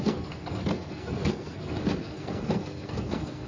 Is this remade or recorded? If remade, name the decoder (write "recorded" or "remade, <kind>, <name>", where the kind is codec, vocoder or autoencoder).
remade, codec, SNAC